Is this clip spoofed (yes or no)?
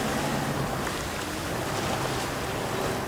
no